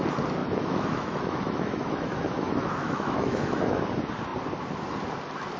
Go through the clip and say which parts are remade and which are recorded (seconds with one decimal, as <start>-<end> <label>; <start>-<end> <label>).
0.0-0.4 recorded; 0.4-3.8 remade; 3.8-5.6 recorded